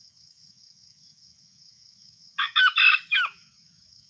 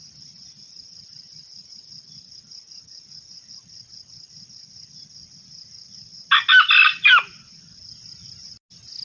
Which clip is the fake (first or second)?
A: first